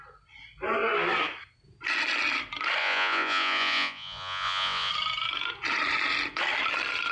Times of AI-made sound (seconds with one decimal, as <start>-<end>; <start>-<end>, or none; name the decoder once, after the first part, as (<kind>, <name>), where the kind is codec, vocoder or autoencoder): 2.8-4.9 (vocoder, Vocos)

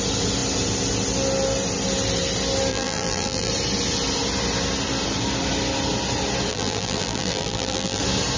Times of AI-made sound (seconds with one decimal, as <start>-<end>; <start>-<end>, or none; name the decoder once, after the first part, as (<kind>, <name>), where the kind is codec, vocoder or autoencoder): 2.7-3.5 (vocoder, BigVGAN v2); 6.5-8.0

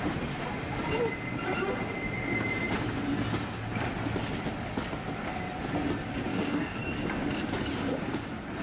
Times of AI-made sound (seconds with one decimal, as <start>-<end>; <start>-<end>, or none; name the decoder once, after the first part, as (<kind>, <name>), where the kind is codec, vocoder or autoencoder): 6.3-6.8 (codec, DAC)

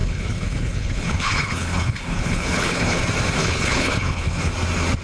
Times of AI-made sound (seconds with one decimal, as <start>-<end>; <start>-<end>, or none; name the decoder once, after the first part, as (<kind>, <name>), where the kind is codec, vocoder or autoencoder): 0.0-3.0 (codec, HILCodec); 3.4-4.5